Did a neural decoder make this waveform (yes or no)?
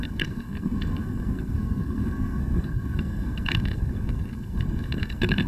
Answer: yes